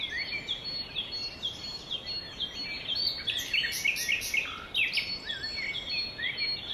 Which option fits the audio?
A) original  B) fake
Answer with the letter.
A